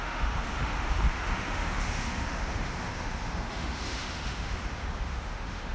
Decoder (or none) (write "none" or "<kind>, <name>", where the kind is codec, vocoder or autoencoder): autoencoder, DAC-VAE